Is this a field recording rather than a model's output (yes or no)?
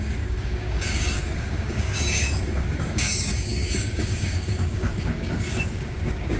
no